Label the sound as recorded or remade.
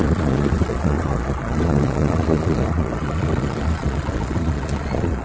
remade